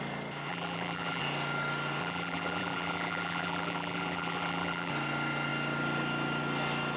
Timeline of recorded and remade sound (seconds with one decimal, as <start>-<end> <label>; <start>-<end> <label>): 0.0-0.5 recorded; 0.5-1.2 remade; 1.2-2.0 recorded; 2.0-4.9 remade; 4.9-7.0 recorded